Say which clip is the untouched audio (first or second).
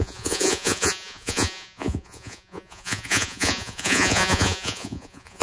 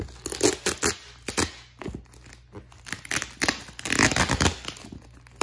second